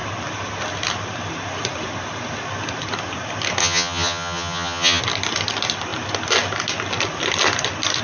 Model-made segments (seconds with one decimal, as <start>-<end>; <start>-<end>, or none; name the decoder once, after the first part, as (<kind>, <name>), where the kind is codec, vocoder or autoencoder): 3.6-5.0 (vocoder, HiFi-GAN)